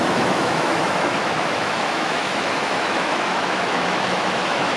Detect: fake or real fake